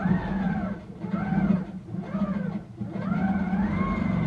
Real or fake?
real